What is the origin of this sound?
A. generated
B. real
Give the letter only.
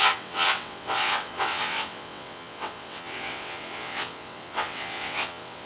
A